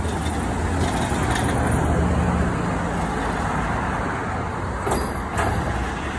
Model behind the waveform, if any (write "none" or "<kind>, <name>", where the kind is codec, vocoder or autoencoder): none